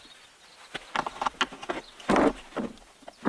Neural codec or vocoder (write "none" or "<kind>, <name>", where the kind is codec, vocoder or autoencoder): none